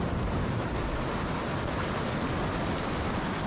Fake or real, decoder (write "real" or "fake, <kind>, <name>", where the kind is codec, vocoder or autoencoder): real